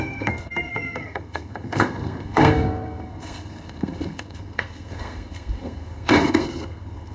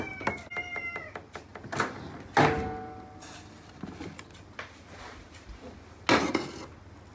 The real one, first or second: second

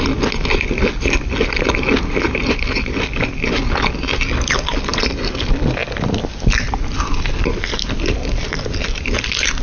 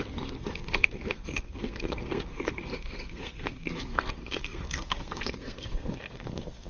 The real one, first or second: first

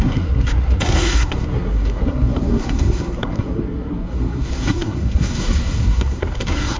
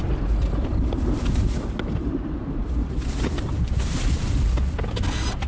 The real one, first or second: second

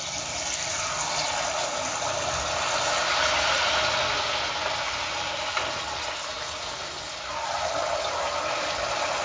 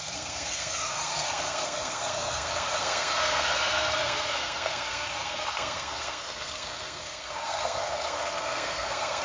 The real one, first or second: first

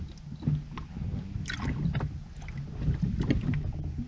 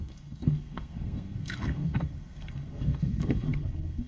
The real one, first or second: first